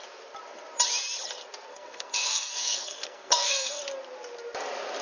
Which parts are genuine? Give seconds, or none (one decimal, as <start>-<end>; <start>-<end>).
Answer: 0.0-1.7; 3.8-5.0